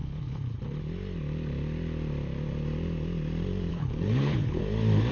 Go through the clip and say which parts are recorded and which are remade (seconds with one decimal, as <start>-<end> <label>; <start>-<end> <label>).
0.0-0.8 remade; 0.8-3.7 recorded; 3.7-4.6 remade; 4.6-5.1 recorded